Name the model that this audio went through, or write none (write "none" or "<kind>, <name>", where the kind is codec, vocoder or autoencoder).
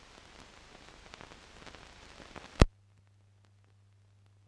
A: none